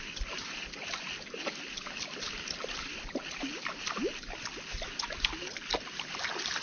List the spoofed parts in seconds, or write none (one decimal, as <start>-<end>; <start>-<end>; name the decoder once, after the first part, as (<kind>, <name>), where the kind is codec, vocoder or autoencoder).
none

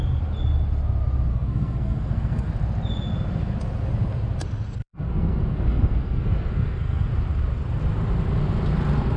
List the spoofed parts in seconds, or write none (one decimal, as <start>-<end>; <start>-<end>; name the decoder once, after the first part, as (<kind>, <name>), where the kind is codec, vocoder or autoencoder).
1.3-2.5 (codec, SNAC); 4.8-7.1